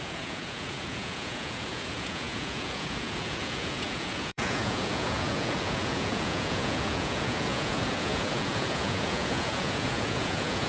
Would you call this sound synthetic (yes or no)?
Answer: yes